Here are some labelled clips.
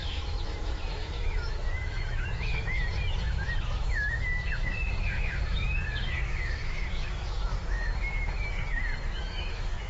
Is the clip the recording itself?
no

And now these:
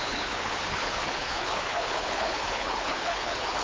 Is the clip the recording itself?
no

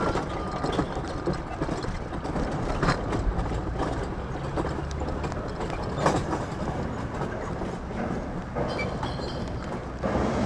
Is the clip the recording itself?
yes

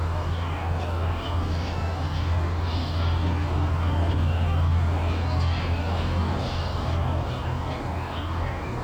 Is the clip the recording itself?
no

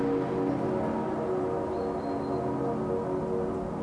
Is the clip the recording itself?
yes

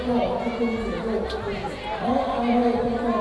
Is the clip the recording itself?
yes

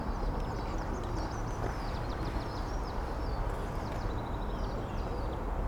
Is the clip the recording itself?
yes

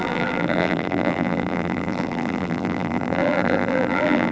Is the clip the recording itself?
no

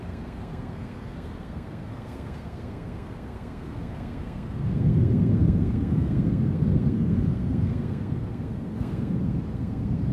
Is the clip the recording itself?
no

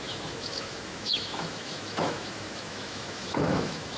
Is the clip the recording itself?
no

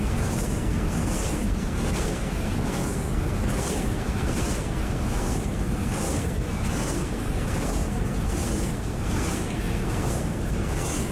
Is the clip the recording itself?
no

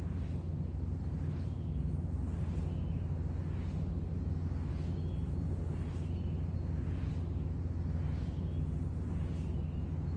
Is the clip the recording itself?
yes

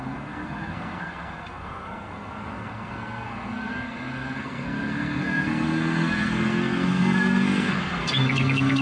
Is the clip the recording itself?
no